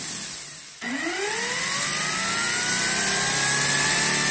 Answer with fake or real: real